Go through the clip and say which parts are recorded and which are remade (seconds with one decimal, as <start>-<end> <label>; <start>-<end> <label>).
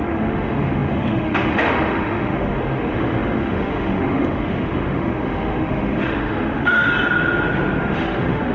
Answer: 0.0-6.9 remade; 6.9-7.8 recorded; 7.8-8.5 remade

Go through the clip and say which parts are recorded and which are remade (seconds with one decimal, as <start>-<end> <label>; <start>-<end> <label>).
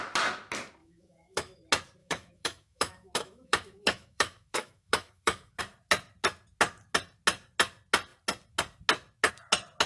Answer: 0.0-0.8 recorded; 0.8-1.6 remade; 1.6-2.0 recorded; 2.0-5.6 remade; 5.6-9.9 recorded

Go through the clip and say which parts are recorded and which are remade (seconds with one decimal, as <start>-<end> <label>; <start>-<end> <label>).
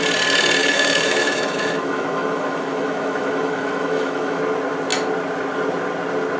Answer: 0.0-0.6 recorded; 0.6-4.4 remade; 4.4-6.4 recorded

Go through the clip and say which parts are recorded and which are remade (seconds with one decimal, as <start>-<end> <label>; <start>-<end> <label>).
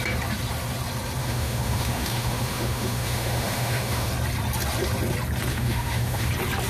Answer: 0.0-1.2 recorded; 1.2-4.1 remade; 4.1-5.5 recorded; 5.5-6.3 remade; 6.3-6.7 recorded